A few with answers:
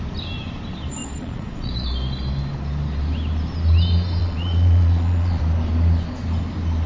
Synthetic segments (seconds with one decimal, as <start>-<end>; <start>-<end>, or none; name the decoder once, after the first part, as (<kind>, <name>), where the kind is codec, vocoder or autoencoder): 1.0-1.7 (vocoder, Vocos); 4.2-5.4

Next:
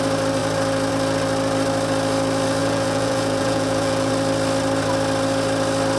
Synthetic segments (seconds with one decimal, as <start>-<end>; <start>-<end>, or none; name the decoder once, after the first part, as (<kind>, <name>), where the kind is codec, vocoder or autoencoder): 2.6-4.1 (vocoder, Vocos)

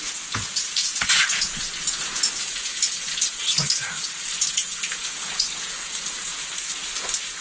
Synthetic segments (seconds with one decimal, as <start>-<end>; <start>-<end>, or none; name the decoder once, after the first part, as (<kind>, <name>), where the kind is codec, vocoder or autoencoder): 0.0-7.4 (vocoder, Vocos)

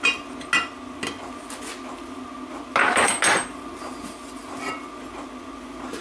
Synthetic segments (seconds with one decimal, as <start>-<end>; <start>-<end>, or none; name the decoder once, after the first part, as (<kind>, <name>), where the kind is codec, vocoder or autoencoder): none

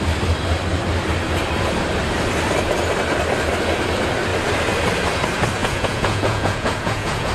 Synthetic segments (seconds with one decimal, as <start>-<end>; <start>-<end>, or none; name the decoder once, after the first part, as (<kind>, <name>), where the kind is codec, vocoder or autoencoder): 5.6-7.3 (vocoder, Vocos)